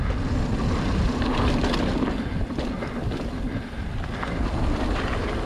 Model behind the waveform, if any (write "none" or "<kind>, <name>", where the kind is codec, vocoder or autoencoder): none